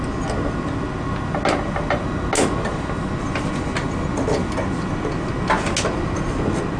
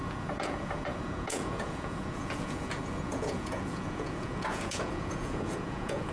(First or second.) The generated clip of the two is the second